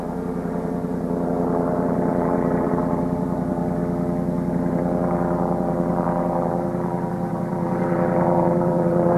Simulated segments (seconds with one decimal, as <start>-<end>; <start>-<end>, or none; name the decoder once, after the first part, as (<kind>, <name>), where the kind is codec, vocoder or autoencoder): 0.0-3.8 (vocoder, BigVGAN v2); 4.5-9.2